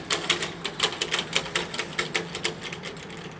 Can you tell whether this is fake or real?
real